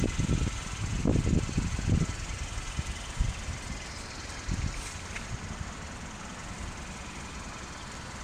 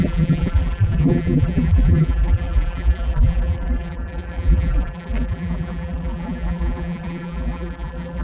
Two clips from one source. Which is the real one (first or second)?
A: first